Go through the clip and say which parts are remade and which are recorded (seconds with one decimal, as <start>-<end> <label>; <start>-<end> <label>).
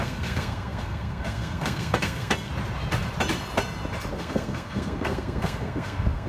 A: 0.0-2.5 remade; 2.5-4.1 recorded; 4.1-6.3 remade